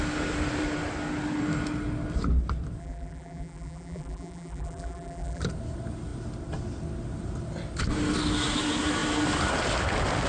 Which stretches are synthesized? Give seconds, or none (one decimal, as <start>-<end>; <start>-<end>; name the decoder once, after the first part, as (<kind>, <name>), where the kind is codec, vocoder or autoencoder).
2.8-5.4 (vocoder, BigVGAN v2)